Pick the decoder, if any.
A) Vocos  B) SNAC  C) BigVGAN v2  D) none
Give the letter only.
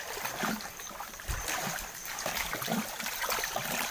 C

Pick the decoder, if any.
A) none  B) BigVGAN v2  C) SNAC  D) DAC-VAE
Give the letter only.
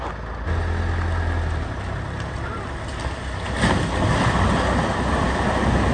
A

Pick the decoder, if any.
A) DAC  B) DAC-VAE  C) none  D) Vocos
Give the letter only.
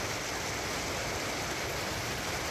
C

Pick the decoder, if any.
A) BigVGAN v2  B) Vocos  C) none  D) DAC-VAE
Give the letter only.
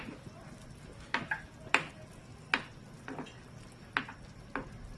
C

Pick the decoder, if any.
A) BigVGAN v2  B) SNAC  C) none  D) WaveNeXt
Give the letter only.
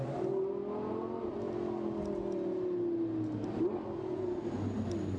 C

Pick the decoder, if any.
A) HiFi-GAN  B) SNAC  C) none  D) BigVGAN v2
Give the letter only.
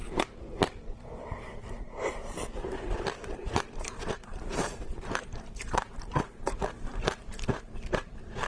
D